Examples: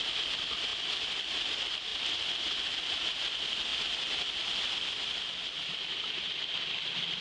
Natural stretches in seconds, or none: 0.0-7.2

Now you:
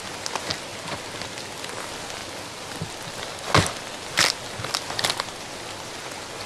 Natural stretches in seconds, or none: 0.0-6.5

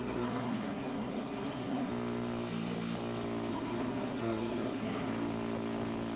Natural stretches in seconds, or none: 1.9-3.5; 5.1-6.2

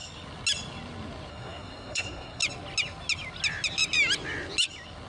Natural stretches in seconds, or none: 0.0-1.3; 2.4-5.1

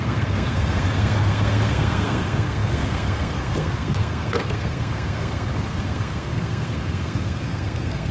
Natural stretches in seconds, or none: none

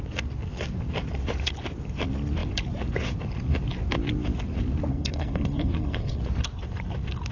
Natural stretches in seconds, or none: 0.0-4.9; 6.2-7.3

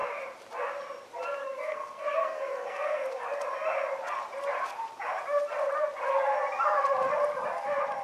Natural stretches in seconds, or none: 0.0-1.4; 3.2-8.0

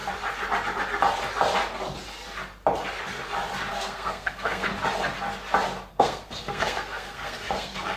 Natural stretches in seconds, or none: 0.0-3.7; 4.7-5.9